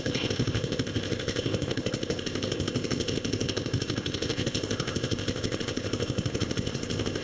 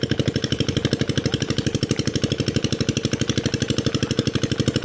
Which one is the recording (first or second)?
second